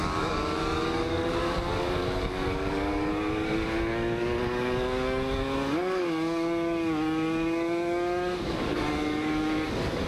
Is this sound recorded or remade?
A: remade